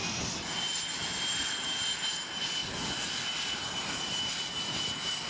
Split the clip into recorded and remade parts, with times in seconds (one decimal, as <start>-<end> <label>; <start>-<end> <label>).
0.0-5.3 recorded